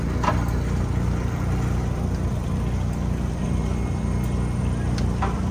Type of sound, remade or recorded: recorded